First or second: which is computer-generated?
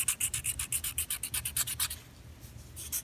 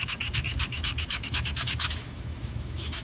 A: second